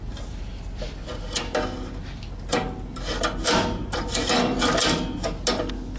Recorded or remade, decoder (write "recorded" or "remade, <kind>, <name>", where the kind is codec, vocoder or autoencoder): recorded